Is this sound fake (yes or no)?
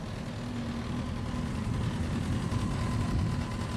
no